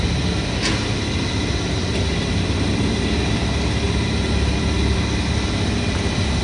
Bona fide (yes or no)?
yes